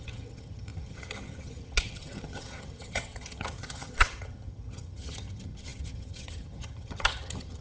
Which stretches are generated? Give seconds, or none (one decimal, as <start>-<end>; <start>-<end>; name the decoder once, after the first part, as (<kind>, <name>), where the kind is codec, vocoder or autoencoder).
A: 0.0-7.6 (vocoder, HiFi-GAN)